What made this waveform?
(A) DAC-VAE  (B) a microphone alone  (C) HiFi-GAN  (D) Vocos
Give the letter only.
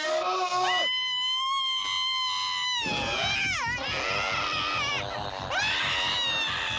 B